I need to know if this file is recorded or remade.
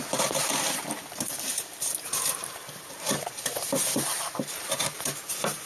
remade